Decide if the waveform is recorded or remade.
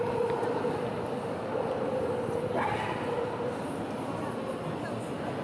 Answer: recorded